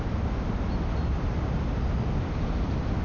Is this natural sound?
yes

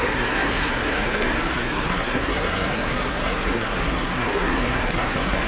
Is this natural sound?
no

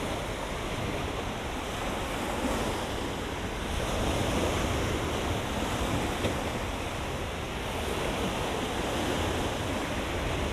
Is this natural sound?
yes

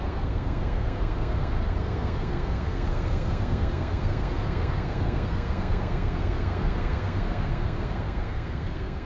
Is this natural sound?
no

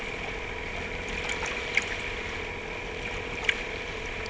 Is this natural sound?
yes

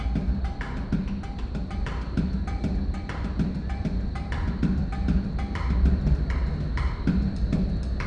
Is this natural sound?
yes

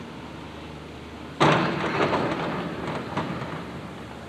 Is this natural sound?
yes